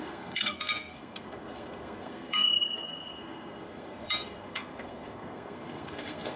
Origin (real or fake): fake